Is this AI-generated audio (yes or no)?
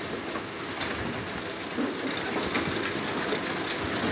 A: no